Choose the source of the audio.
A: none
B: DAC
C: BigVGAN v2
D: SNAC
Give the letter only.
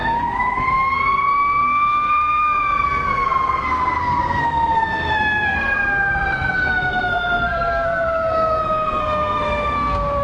D